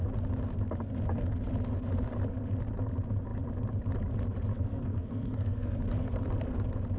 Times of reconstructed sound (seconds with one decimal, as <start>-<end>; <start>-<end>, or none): 4.5-5.7